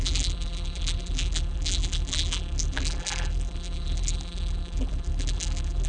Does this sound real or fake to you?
fake